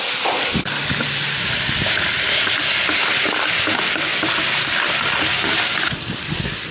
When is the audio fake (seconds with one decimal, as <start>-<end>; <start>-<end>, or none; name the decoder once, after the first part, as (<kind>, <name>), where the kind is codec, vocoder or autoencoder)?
none